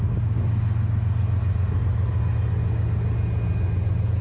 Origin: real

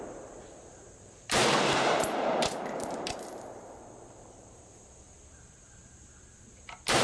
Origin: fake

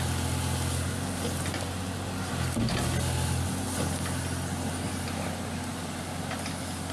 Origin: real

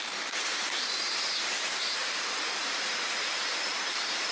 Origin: fake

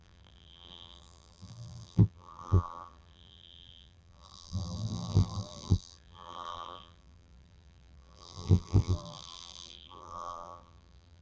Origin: fake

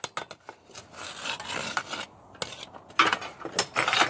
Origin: real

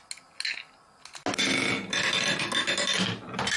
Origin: real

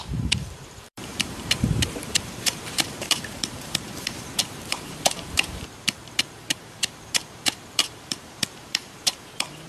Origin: fake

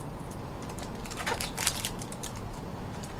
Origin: fake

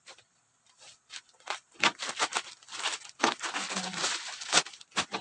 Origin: real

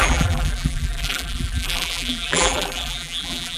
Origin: fake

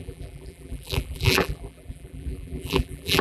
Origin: fake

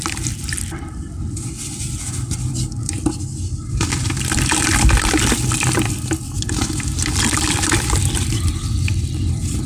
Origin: fake